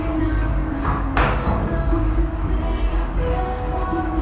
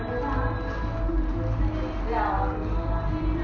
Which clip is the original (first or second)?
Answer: second